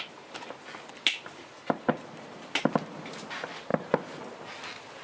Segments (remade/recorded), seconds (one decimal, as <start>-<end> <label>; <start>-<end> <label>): 0.0-3.7 recorded; 3.7-4.5 remade; 4.5-5.0 recorded